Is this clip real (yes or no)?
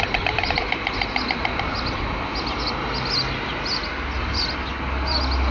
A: yes